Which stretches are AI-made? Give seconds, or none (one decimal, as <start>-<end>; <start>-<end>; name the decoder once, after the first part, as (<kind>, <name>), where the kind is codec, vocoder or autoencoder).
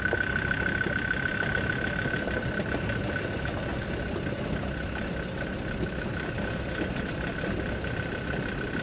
none